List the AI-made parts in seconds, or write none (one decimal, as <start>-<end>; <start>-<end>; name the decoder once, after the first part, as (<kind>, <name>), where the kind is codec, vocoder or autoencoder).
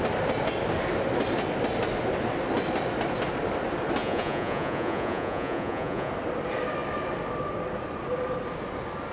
4.0-6.1 (vocoder, Vocos)